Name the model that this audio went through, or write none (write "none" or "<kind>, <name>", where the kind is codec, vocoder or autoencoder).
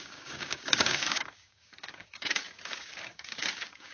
codec, DAC